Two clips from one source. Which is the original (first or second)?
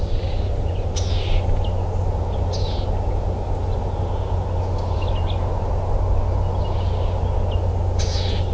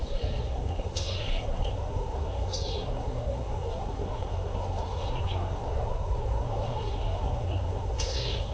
first